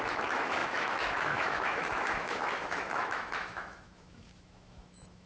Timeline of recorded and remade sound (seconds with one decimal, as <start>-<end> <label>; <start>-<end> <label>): 0.0-5.3 remade